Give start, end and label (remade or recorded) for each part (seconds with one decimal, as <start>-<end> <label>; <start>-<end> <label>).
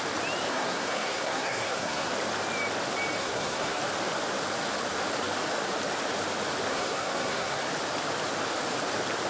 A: 0.0-0.5 recorded; 0.5-2.1 remade; 2.1-3.2 recorded; 3.2-3.8 remade; 3.8-6.7 recorded; 6.7-7.7 remade; 7.7-9.3 recorded